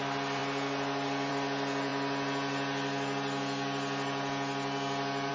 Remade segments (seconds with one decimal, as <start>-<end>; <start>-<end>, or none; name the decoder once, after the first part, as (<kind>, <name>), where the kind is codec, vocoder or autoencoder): none